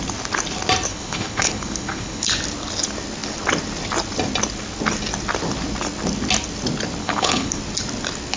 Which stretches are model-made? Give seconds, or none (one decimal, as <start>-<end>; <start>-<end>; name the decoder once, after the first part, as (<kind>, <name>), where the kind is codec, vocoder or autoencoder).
0.9-2.3 (codec, HILCodec); 7.0-7.6